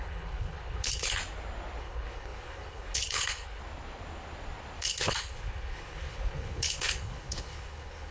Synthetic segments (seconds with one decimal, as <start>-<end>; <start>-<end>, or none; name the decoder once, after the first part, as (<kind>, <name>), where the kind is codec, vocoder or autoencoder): 0.0-1.2 (codec, HILCodec); 1.8-3.6; 4.8-8.1